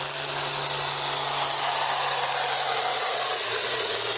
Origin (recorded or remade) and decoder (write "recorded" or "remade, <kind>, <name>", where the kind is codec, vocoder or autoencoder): recorded